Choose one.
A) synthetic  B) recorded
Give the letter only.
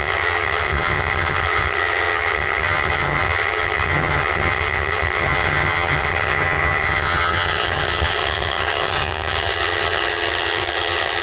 A